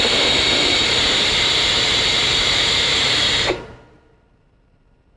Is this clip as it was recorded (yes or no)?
no